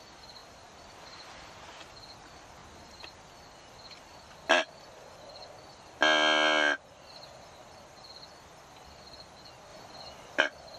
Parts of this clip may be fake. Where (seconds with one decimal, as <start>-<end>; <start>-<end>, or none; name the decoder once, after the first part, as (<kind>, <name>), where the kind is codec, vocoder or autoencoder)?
none